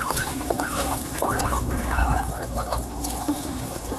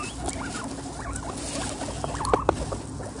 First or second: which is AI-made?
first